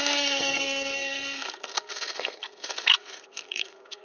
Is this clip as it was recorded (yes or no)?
no